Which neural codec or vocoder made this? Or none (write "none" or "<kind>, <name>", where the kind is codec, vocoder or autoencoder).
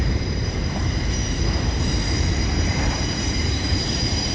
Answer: vocoder, BigVGAN v2